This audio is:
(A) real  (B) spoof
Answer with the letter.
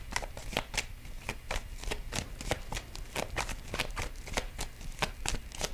A